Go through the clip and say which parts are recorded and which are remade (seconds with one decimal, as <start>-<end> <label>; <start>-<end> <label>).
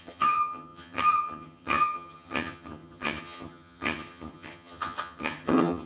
0.0-5.9 remade